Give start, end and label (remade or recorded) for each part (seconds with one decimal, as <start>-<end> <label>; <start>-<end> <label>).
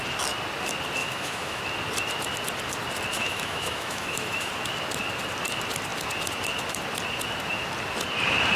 0.0-1.0 recorded; 1.0-1.6 remade; 1.6-3.1 recorded; 3.1-4.5 remade; 4.5-8.6 recorded